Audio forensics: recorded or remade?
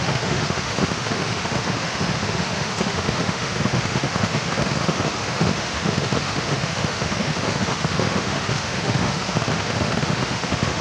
remade